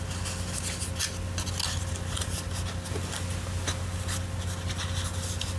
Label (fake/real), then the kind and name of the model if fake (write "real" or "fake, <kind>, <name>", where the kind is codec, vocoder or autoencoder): real